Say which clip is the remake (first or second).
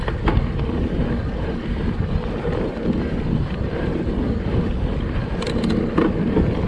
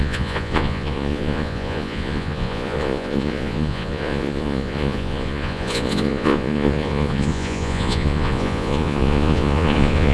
second